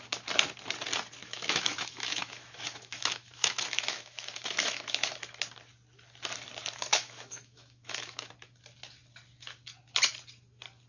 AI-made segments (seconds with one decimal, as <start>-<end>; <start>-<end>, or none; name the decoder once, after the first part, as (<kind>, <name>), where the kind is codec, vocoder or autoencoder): 1.2-5.1 (autoencoder, DAC-VAE); 6.9-8.3